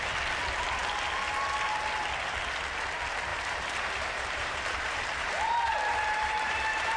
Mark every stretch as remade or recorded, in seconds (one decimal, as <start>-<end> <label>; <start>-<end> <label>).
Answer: 0.0-3.3 recorded; 3.3-7.0 remade